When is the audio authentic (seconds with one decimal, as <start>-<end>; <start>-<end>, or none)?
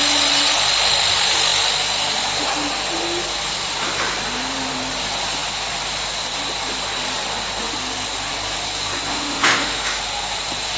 0.0-9.1; 10.0-10.8